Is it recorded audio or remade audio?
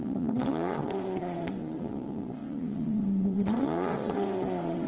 remade